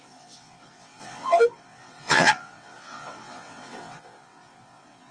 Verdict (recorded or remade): remade